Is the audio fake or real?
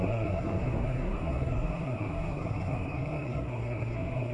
fake